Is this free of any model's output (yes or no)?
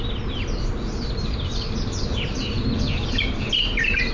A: yes